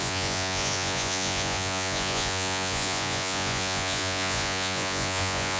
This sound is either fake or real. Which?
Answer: fake